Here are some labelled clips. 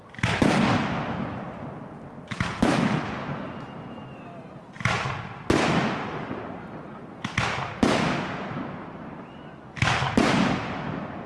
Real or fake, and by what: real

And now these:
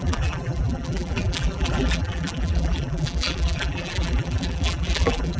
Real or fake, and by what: fake, vocoder, BigVGAN v2